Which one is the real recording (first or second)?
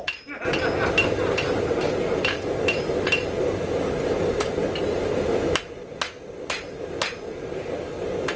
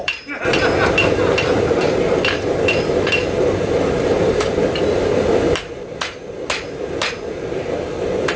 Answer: first